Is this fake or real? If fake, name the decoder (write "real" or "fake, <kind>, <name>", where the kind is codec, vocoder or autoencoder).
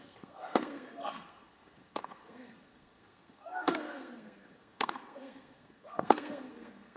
fake, codec, SNAC